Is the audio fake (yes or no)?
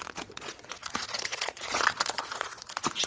yes